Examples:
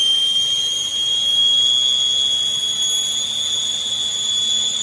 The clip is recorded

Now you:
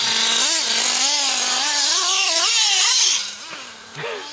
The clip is recorded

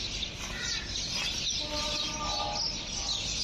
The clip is recorded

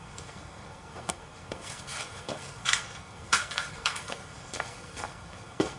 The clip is remade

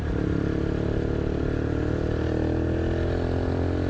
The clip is recorded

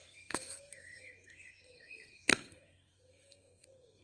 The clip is remade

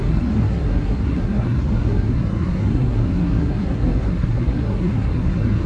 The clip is remade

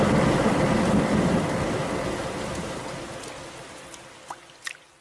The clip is recorded